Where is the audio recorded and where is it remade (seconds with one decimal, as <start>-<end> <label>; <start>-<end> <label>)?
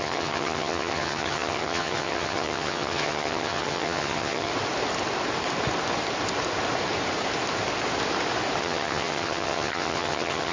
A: 0.0-4.5 remade; 4.5-8.6 recorded; 8.6-10.5 remade